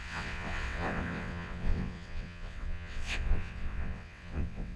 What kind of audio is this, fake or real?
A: fake